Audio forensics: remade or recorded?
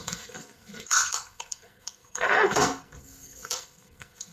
remade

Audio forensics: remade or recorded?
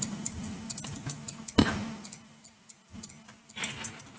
recorded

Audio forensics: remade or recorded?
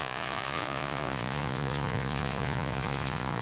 remade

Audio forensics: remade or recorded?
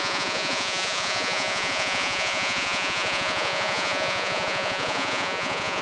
remade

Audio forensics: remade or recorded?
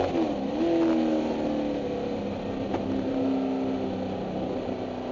recorded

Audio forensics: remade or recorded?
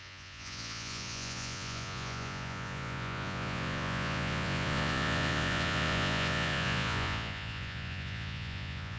remade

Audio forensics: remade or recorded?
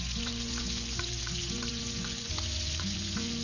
remade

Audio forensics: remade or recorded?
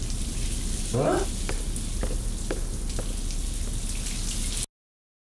recorded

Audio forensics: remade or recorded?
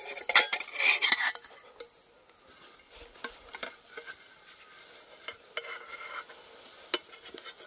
recorded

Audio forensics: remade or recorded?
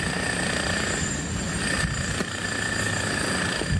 recorded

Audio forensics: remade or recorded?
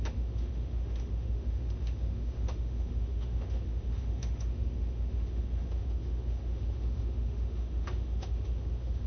remade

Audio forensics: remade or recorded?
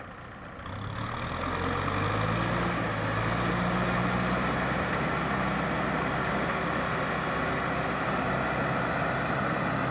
recorded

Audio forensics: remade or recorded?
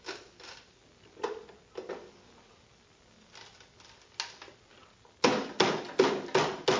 recorded